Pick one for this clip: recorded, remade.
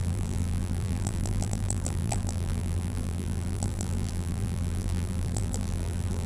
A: remade